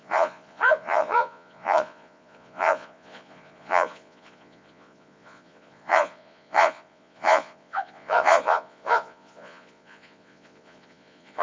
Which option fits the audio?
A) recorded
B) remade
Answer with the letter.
B